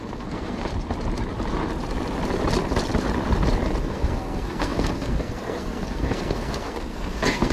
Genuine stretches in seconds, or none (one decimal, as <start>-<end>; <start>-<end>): 0.7-3.8